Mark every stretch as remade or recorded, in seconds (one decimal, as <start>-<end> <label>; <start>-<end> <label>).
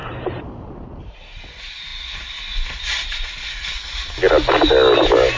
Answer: 0.0-1.4 remade; 1.4-5.4 recorded